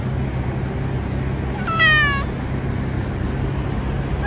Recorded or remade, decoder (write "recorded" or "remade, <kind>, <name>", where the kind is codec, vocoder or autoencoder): recorded